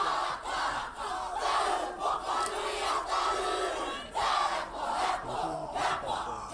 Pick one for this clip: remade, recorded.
recorded